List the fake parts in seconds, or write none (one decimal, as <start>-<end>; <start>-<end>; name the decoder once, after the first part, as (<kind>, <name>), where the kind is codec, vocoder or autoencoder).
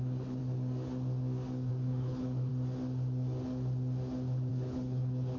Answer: 0.0-0.4 (codec, HILCodec); 1.7-2.5; 4.5-5.4